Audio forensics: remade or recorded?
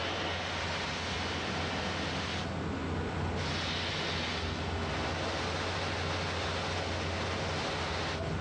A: recorded